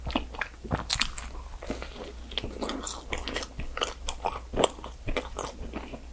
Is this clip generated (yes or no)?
no